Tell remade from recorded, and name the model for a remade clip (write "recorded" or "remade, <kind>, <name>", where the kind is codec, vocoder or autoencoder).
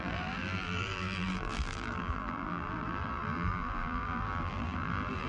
remade, vocoder, BigVGAN v2